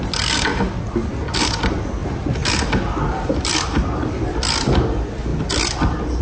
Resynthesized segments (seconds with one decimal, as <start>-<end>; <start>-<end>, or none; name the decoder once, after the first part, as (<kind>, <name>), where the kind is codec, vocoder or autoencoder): none